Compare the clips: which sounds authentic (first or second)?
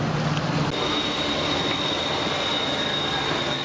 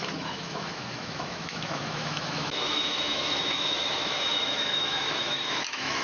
first